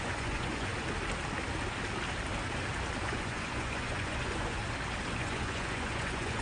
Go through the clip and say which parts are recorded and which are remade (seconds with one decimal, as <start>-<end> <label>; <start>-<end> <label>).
0.0-0.7 remade; 0.7-3.0 recorded; 3.0-4.6 remade; 4.6-5.2 recorded; 5.2-6.4 remade